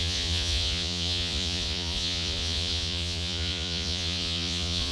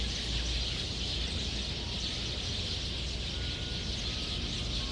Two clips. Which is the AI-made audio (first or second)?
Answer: first